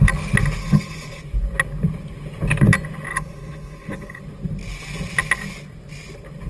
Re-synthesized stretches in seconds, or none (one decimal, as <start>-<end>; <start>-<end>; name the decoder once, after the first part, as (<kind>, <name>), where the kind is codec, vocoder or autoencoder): 0.6-1.2 (codec, HILCodec); 3.1-4.2